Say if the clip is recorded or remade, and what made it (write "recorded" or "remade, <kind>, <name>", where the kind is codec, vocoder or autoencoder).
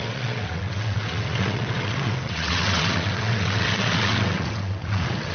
remade, vocoder, WaveNeXt